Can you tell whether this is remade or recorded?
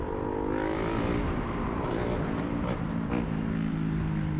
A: recorded